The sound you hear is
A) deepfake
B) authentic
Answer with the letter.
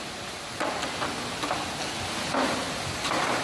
B